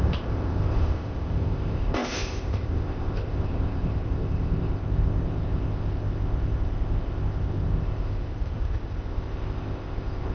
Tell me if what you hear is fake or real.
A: fake